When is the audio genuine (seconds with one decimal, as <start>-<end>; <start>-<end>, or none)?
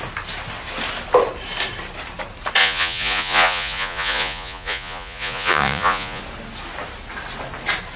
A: 0.0-2.6; 6.2-8.0